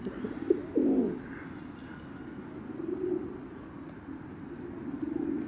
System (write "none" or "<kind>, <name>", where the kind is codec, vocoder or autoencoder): none